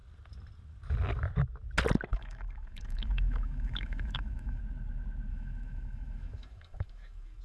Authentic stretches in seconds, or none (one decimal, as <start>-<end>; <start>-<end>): 0.0-2.1; 4.6-5.3